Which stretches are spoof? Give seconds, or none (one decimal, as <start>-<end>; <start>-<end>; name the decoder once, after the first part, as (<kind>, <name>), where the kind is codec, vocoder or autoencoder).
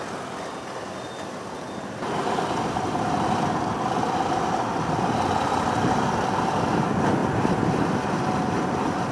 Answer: 7.2-9.1 (vocoder, BigVGAN v2)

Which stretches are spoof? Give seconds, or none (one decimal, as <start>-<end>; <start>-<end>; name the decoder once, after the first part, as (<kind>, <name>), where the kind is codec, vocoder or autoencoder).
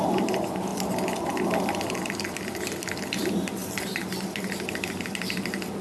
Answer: 3.6-4.9 (vocoder, BigVGAN v2)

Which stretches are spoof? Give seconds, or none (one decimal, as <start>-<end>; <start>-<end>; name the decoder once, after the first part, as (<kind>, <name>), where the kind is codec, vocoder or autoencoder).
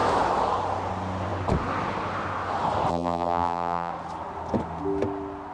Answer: 2.9-3.9 (vocoder, BigVGAN v2)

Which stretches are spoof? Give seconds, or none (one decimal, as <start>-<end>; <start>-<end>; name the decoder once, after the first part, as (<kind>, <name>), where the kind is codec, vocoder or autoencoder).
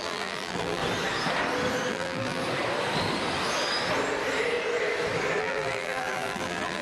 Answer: 0.0-0.8 (vocoder, BigVGAN v2); 1.9-2.4; 5.4-6.8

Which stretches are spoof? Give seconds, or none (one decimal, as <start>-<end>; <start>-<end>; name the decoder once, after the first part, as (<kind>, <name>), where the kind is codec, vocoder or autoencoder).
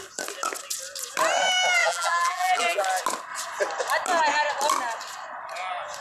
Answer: 1.8-2.8 (vocoder, BigVGAN v2)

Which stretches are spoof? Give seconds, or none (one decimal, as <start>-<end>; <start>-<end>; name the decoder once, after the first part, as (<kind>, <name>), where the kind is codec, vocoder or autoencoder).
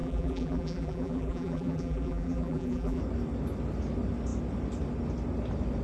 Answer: 0.0-3.0 (vocoder, BigVGAN v2)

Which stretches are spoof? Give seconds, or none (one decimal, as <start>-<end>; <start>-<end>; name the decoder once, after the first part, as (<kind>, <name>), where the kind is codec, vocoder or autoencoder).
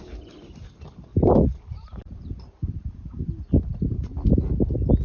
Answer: 1.1-3.3 (vocoder, BigVGAN v2)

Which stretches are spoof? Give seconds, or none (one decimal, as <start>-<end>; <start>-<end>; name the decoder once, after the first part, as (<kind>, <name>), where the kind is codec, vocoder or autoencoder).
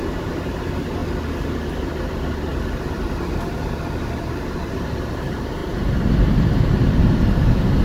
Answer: 0.0-1.0 (vocoder, BigVGAN v2); 1.8-2.5; 4.2-7.8